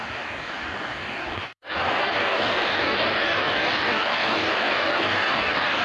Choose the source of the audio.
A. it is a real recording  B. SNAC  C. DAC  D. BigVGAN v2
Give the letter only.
C